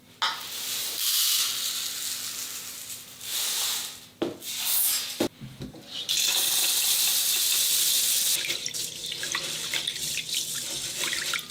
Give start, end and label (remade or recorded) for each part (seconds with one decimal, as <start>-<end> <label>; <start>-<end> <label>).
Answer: 0.0-11.5 recorded

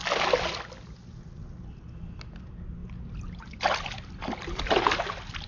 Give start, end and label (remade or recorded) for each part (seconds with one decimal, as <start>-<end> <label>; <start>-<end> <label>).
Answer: 0.0-5.5 recorded

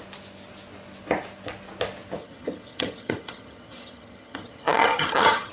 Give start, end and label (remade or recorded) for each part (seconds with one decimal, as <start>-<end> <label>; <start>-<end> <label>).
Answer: 0.0-2.2 recorded; 2.2-5.5 remade

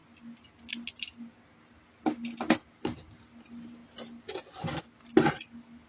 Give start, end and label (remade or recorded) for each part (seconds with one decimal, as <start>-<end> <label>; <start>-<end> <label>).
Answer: 0.0-5.9 recorded

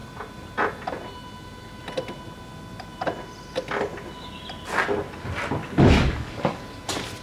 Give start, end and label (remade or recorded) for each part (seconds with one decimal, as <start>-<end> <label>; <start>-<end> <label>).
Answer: 0.0-5.6 recorded; 5.6-6.6 remade; 6.6-7.2 recorded